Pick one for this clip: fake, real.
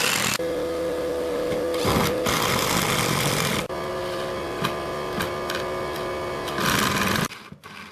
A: real